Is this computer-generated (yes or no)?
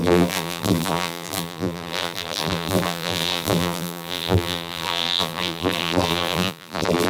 yes